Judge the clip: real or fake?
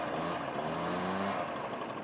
real